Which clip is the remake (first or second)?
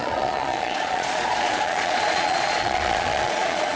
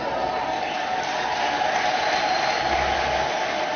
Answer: first